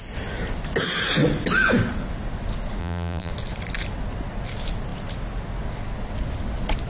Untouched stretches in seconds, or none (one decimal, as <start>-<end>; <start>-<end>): 0.0-2.8; 3.3-6.9